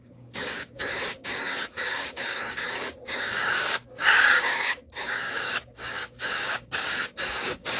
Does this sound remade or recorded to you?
remade